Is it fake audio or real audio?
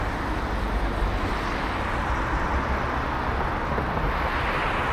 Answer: real